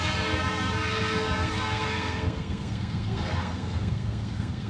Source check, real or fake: fake